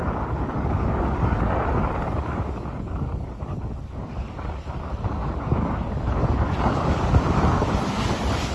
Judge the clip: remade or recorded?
remade